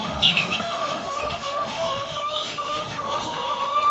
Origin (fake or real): fake